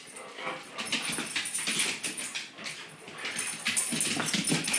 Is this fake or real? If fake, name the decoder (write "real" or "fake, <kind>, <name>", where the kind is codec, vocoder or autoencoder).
real